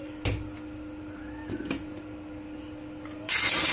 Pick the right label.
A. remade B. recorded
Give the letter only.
B